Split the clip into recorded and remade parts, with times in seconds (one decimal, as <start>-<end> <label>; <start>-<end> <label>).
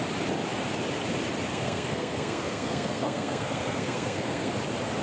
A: 0.0-1.5 recorded; 1.5-4.5 remade; 4.5-5.0 recorded